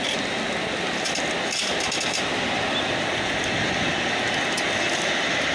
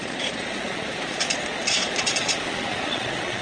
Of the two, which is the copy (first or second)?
second